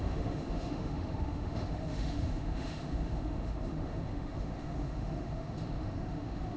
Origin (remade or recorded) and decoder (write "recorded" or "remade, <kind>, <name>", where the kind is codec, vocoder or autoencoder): remade, autoencoder, DAC-VAE